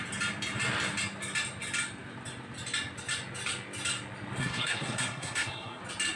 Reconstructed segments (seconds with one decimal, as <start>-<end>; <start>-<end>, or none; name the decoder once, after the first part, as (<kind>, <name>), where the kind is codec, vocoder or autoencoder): 4.4-5.8 (codec, SNAC)